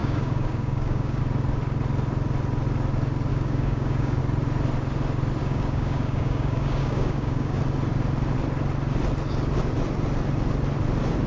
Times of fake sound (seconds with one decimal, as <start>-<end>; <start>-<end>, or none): 0.0-1.2; 3.3-4.2; 5.4-7.6